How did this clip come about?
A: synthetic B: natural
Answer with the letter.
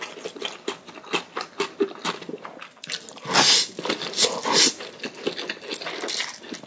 B